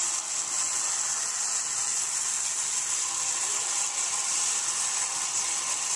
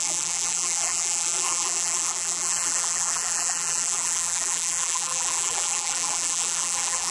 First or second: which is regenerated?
second